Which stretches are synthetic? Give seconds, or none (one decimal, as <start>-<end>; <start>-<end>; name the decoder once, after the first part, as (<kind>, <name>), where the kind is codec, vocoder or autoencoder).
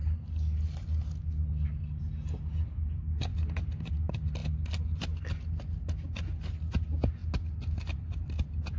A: none